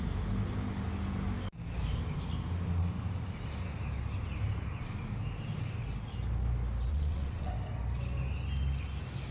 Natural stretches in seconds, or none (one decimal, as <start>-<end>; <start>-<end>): 0.0-6.9; 7.5-9.3